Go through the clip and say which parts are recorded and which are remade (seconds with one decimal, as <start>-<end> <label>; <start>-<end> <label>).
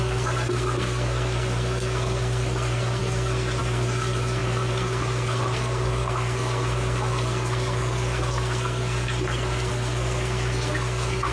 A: 0.0-11.3 remade